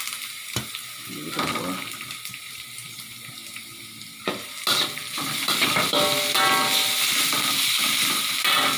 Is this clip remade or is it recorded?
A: recorded